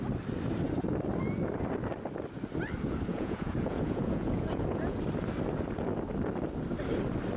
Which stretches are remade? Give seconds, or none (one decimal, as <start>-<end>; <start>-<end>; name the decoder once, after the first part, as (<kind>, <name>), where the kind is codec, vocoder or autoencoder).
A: 3.1-5.0 (vocoder, Vocos)